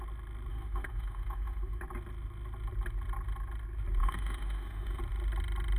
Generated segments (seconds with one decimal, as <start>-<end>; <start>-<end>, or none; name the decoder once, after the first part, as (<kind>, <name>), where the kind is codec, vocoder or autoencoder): 0.5-1.8 (autoencoder, DAC-VAE); 4.0-5.0